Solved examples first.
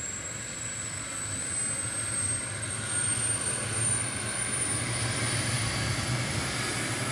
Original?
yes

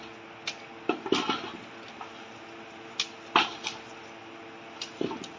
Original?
yes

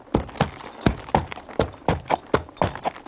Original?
yes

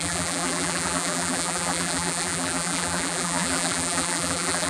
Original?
no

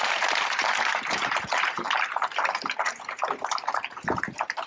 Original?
no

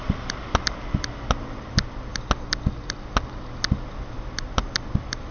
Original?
yes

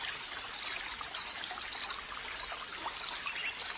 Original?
yes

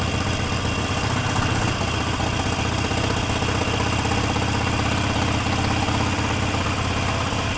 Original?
yes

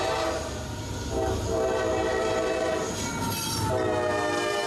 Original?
yes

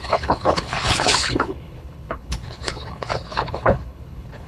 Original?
no